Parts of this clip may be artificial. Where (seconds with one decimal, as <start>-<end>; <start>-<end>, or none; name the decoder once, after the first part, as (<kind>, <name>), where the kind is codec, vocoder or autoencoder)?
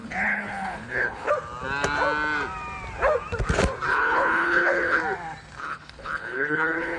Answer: 0.0-1.3 (codec, HILCodec); 3.9-5.0; 5.6-7.0